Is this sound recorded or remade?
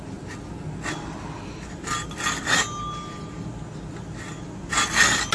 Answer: recorded